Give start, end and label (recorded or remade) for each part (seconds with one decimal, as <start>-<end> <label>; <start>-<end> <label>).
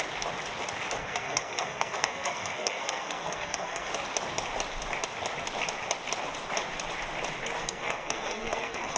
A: 0.0-1.0 recorded; 1.0-3.9 remade; 3.9-7.6 recorded; 7.6-9.0 remade